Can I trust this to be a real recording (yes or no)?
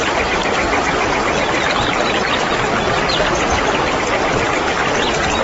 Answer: yes